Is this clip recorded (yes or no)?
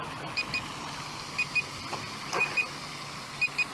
yes